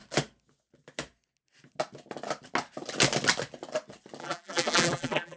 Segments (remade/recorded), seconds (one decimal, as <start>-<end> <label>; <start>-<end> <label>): 0.0-4.2 recorded; 4.2-5.4 remade